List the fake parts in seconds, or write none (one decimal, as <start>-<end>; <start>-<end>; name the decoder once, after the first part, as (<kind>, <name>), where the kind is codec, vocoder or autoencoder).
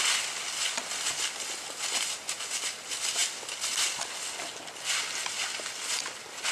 none